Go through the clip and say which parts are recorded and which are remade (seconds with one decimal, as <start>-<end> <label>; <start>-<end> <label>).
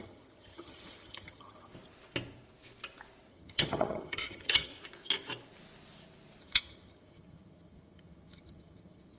0.0-1.7 remade; 1.7-3.3 recorded; 3.3-4.7 remade; 4.7-6.4 recorded; 6.4-9.2 remade